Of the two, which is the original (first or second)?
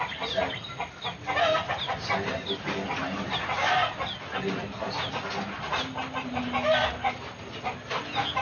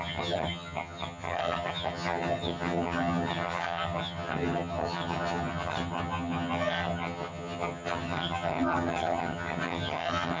first